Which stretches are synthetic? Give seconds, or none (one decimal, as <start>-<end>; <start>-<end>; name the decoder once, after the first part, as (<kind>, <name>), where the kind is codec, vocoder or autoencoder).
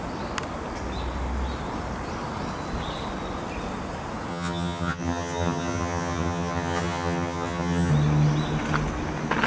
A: 4.3-7.9 (vocoder, HiFi-GAN)